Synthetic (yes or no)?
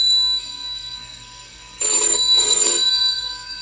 yes